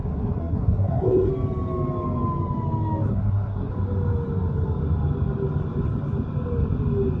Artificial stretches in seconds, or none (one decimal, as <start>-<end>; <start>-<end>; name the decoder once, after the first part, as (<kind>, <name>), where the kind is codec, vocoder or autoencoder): 0.0-1.3 (codec, SNAC); 3.1-3.7